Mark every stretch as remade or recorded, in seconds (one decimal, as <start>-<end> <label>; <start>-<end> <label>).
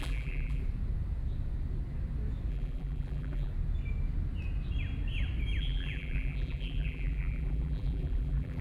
0.0-0.6 remade; 0.6-2.5 recorded; 2.5-3.5 remade; 3.5-5.6 recorded; 5.6-8.6 remade